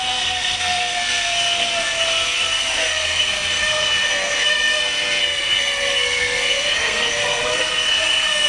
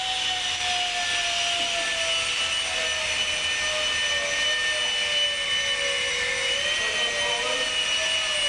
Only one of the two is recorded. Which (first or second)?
second